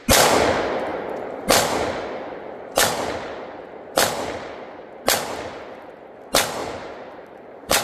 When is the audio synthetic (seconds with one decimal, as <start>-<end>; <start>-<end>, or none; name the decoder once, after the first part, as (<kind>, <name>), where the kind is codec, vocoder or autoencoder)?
6.6-7.8 (vocoder, BigVGAN v2)